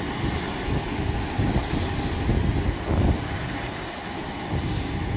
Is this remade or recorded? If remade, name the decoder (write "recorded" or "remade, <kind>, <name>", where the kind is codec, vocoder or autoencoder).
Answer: recorded